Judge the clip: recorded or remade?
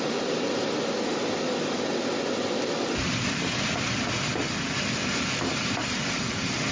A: recorded